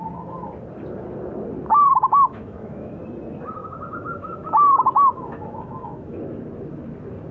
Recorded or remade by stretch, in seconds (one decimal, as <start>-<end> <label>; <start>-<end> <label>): 0.0-1.9 recorded; 1.9-3.0 remade; 3.0-3.6 recorded; 3.6-6.2 remade; 6.2-7.3 recorded